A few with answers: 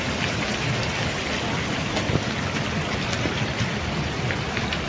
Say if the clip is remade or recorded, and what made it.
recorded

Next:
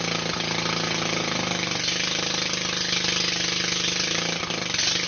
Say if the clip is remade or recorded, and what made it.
recorded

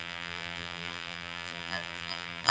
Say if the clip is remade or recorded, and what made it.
remade, vocoder, BigVGAN v2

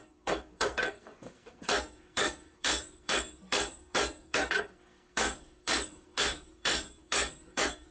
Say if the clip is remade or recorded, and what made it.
remade, codec, SNAC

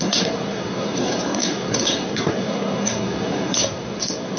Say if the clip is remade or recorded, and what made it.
remade, codec, SNAC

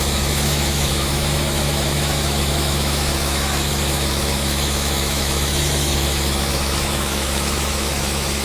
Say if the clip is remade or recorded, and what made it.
remade, autoencoder, DAC-VAE